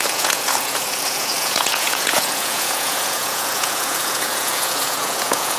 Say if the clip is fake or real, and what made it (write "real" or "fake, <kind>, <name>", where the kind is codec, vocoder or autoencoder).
fake, vocoder, Vocos